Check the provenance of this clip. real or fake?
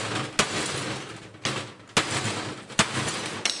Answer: real